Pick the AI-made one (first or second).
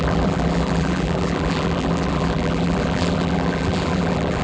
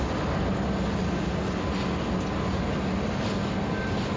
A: first